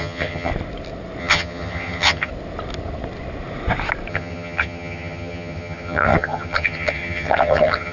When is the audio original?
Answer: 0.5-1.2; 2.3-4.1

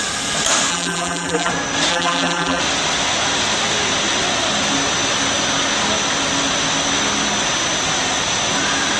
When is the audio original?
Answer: 0.0-0.7; 1.5-1.9; 2.6-9.0

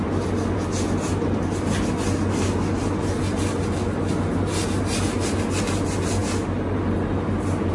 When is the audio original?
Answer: 0.0-7.7

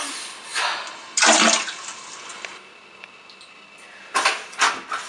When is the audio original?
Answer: 0.0-5.1